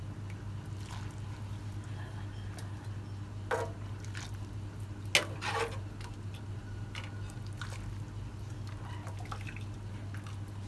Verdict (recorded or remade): recorded